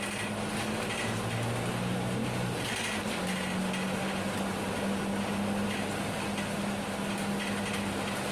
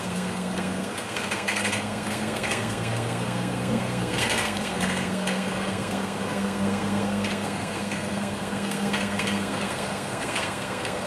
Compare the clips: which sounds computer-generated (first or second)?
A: second